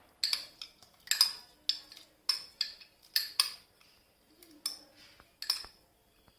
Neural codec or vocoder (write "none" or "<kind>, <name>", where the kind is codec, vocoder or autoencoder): none